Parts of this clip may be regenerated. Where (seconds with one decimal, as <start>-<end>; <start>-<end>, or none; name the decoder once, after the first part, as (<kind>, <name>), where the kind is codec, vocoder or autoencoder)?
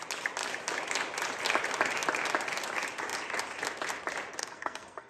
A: 4.4-5.1 (codec, SNAC)